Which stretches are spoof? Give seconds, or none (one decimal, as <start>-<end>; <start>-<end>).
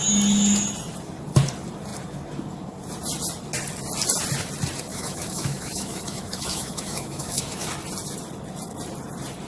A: 4.9-7.7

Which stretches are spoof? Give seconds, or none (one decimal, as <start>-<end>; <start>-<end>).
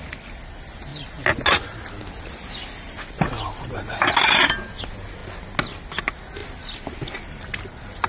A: none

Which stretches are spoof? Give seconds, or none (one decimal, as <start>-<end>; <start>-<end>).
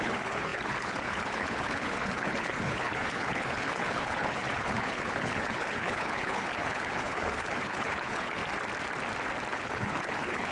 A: 0.0-8.4; 9.5-10.5